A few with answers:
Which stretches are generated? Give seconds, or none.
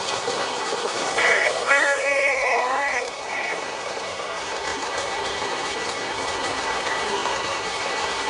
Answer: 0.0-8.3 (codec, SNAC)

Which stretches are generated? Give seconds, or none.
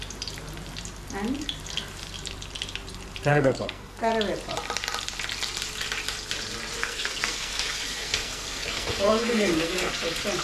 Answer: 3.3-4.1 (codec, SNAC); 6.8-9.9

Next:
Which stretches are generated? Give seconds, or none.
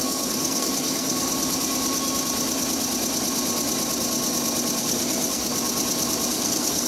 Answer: 0.0-1.3 (codec, SNAC); 4.8-5.5; 6.3-6.9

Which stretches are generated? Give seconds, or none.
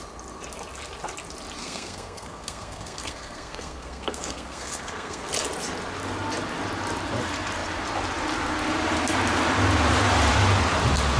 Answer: 1.6-5.3 (codec, SNAC)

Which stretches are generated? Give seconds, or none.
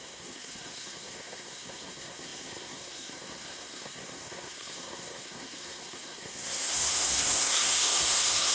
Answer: 0.0-8.5 (codec, SNAC)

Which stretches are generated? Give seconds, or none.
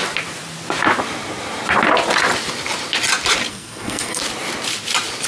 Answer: 3.5-4.2 (codec, SNAC)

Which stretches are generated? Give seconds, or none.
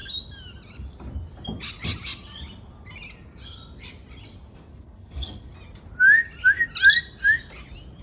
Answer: 4.5-5.5 (codec, SNAC)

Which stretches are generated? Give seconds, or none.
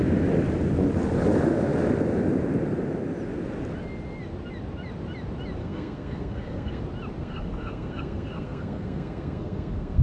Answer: 5.6-6.8 (codec, SNAC); 7.2-10.0